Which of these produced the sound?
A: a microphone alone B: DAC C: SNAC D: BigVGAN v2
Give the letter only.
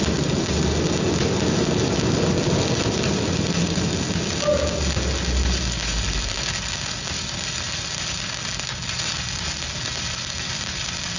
A